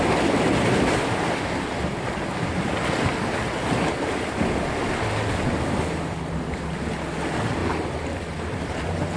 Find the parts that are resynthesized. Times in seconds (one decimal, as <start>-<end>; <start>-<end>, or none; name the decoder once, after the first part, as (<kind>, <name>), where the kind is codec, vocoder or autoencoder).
none